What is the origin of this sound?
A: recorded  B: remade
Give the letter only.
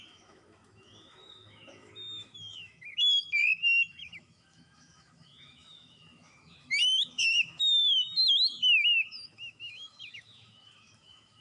B